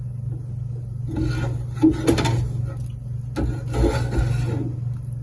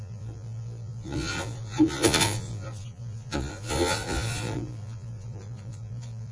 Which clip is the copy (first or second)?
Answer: second